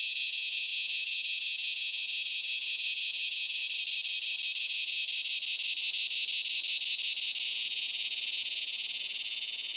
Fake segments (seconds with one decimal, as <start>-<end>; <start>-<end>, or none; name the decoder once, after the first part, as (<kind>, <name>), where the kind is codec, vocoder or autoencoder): 0.0-3.6 (vocoder, Vocos); 4.6-5.0; 7.5-9.8